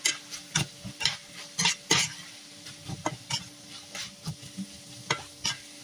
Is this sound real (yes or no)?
yes